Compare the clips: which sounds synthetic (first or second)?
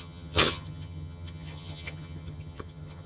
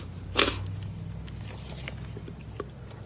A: first